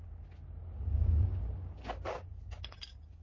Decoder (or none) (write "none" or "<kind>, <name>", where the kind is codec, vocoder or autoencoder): none